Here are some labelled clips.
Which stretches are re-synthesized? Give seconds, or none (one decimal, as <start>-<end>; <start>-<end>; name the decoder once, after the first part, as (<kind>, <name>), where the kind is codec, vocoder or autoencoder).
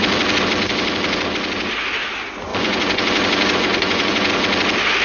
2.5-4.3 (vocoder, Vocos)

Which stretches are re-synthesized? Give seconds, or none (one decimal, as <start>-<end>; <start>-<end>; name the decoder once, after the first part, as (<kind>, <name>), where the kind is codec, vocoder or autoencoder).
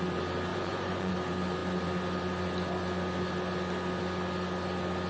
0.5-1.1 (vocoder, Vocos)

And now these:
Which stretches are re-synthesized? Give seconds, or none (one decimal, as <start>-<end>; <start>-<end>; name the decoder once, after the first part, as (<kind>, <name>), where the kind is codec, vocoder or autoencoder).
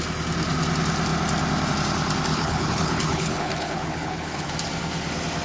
2.3-4.5 (codec, HILCodec)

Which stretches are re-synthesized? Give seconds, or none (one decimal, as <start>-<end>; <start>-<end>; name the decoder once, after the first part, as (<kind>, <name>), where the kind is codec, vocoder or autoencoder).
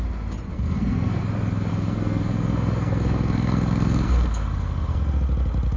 0.5-1.2 (codec, SNAC); 1.7-5.0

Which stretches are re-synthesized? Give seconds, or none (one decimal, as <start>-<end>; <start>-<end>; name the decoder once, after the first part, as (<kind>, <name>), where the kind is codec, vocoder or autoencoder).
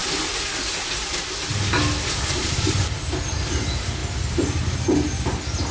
0.0-0.5 (vocoder, BigVGAN v2); 4.0-4.8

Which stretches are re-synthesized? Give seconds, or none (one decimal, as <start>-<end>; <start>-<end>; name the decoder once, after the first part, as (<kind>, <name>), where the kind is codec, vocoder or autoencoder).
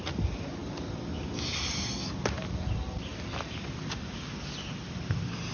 none